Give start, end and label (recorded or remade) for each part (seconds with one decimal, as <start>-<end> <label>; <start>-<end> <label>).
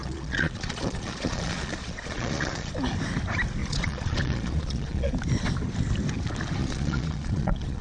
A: 0.0-2.7 remade; 2.7-3.6 recorded; 3.6-5.1 remade; 5.1-6.6 recorded; 6.6-7.8 remade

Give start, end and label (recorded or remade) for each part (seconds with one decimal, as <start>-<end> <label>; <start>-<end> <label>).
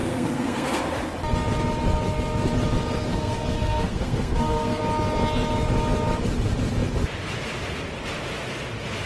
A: 0.0-0.8 remade; 0.8-3.1 recorded; 3.1-4.8 remade; 4.8-9.1 recorded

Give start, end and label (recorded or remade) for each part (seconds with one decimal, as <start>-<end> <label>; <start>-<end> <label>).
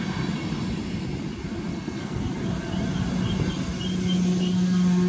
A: 0.0-1.7 recorded; 1.7-2.2 remade; 2.2-5.1 recorded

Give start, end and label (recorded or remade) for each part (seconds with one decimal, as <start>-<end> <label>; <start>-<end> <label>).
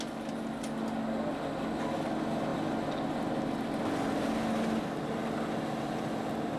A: 0.0-6.6 recorded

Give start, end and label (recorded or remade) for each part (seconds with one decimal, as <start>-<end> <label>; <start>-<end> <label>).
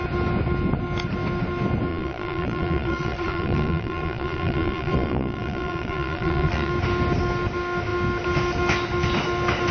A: 0.0-1.9 recorded; 1.9-6.7 remade; 6.7-9.7 recorded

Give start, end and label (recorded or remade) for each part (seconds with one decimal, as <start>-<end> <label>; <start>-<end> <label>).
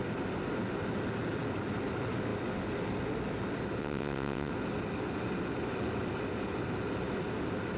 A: 0.0-3.8 recorded; 3.8-4.5 remade; 4.5-7.8 recorded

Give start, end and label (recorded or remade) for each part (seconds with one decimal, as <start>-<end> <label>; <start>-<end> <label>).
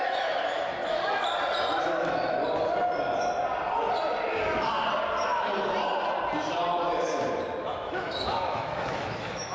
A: 0.0-1.0 remade; 1.0-1.8 recorded; 1.8-2.4 remade; 2.4-7.6 recorded; 7.6-9.5 remade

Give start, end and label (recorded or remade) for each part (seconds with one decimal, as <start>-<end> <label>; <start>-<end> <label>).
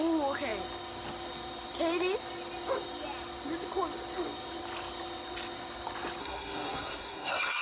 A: 0.0-6.2 recorded; 6.2-7.6 remade